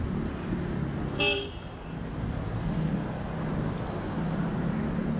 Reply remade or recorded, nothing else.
recorded